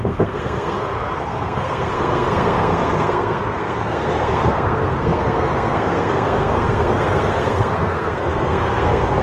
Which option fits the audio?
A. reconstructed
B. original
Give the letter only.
A